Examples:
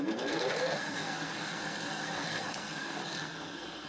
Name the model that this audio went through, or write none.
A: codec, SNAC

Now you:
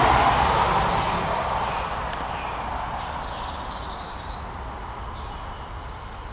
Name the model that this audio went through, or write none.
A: none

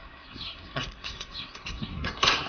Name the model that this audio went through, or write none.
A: codec, SNAC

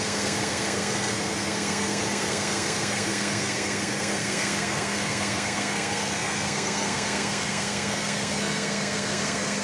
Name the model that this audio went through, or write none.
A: codec, SNAC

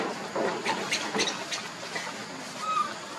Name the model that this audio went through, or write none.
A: none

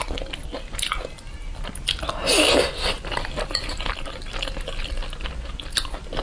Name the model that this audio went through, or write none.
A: none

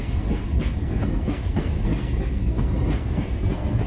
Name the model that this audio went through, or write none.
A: codec, SNAC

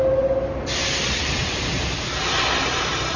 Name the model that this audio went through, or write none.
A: none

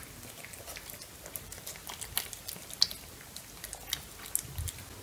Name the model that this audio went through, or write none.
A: none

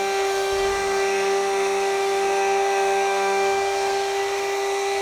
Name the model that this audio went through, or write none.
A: codec, SNAC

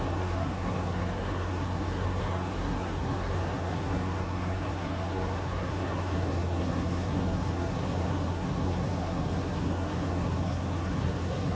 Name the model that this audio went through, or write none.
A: codec, SNAC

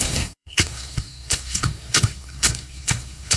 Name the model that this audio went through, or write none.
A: codec, SNAC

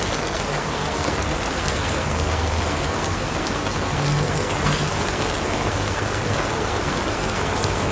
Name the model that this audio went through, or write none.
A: codec, SNAC